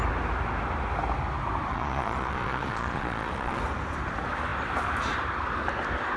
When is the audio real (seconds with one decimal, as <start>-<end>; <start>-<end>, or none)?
0.0-1.7; 3.6-6.2